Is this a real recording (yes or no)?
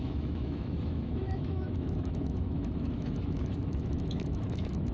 no